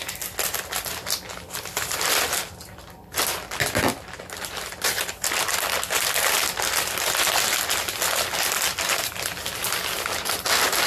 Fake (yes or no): no